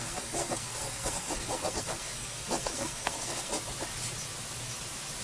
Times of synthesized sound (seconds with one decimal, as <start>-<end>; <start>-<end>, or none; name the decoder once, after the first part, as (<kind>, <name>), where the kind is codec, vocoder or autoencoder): 0.0-3.5 (codec, SNAC)